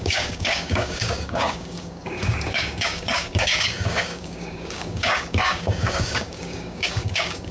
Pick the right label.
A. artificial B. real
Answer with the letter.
A